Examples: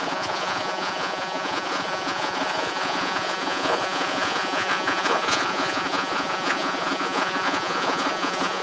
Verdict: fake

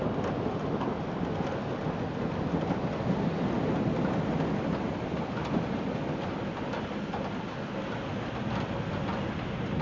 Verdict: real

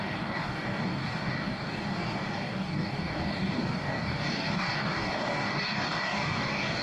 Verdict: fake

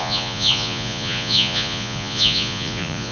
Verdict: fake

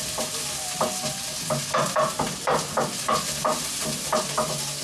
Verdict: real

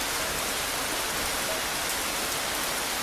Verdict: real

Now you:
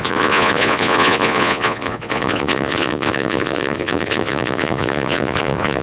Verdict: fake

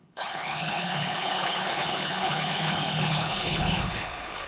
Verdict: fake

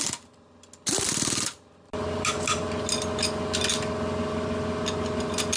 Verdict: real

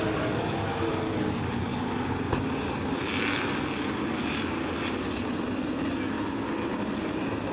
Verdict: real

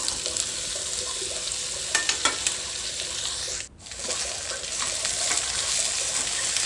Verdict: real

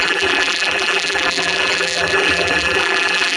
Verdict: fake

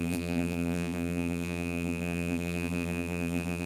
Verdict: fake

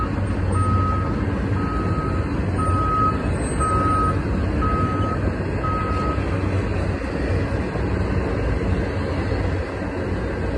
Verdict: real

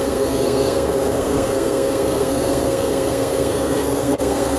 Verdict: fake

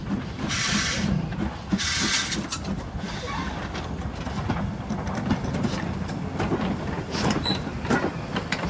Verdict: real